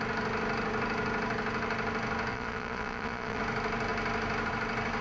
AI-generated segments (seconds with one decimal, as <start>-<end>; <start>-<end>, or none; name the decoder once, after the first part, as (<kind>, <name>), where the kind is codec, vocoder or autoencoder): 2.3-3.4 (vocoder, Vocos)